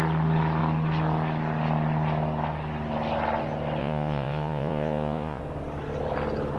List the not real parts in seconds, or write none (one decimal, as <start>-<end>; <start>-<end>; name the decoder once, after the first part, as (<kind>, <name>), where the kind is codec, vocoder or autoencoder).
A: 3.8-5.4 (vocoder, Vocos)